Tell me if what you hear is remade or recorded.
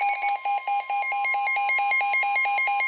recorded